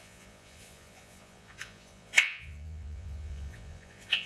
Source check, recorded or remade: remade